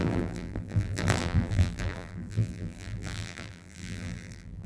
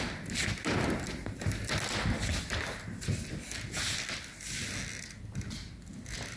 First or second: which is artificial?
first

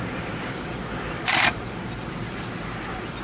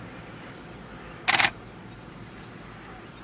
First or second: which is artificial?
first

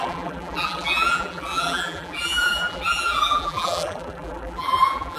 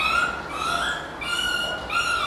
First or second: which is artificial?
first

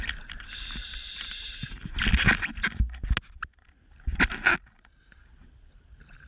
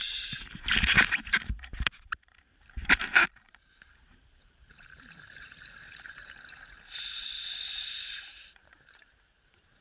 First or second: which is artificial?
second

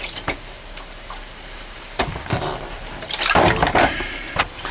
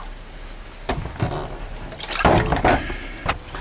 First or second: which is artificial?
first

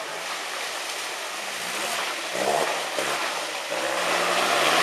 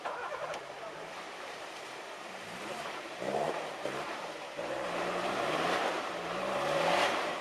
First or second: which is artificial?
second